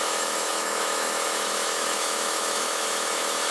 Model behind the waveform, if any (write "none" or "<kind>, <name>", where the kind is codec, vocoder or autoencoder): autoencoder, DAC-VAE